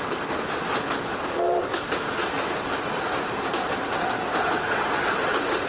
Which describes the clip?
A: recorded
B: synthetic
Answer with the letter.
A